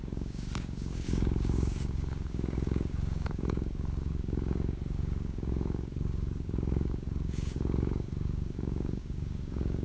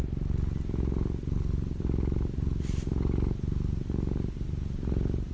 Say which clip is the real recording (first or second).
second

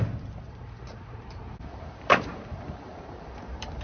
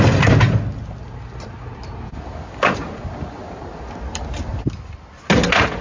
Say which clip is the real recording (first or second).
second